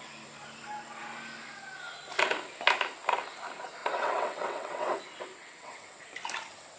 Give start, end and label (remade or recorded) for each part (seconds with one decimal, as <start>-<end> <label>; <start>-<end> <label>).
0.0-3.8 recorded; 3.8-5.0 remade; 5.0-5.4 recorded; 5.4-6.0 remade; 6.0-6.8 recorded